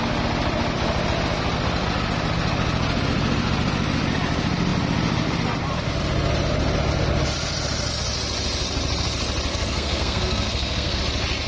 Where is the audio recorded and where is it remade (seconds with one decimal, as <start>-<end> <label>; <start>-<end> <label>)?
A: 0.0-9.5 recorded; 9.5-11.0 remade; 11.0-11.5 recorded